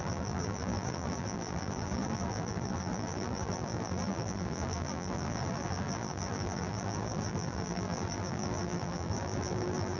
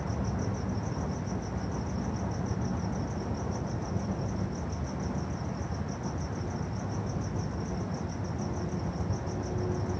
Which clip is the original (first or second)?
second